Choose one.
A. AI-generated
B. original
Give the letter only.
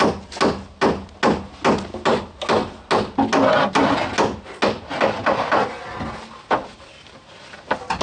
B